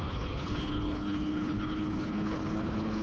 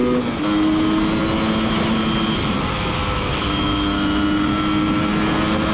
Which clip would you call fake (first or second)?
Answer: first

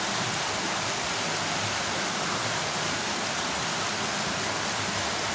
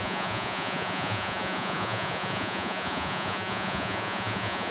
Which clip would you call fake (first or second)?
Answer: second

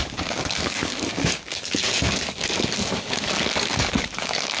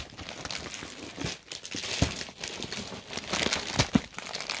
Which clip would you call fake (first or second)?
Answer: first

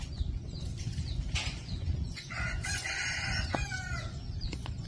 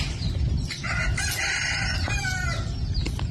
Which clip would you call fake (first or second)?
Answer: first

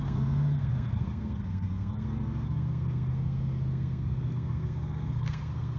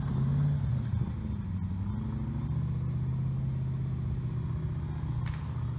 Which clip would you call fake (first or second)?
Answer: first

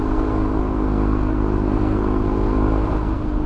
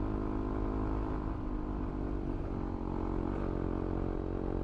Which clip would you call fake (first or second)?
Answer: first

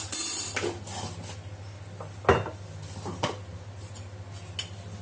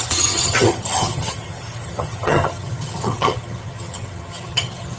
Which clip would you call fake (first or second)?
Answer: second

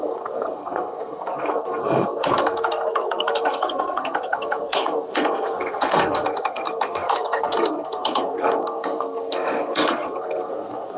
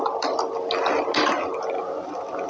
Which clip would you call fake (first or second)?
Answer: first